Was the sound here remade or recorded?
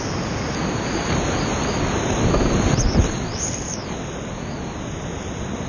recorded